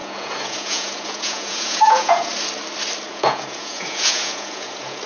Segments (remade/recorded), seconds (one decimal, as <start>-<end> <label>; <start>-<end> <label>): 0.0-2.3 remade; 2.3-3.1 recorded; 3.1-5.1 remade